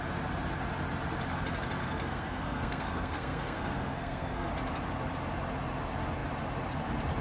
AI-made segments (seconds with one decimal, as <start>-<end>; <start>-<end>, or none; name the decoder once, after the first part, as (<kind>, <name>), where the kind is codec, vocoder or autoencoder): 1.8-4.5 (codec, SNAC)